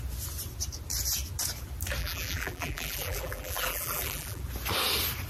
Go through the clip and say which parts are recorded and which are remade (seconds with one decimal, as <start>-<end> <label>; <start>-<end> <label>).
0.0-2.0 recorded; 2.0-4.4 remade; 4.4-5.3 recorded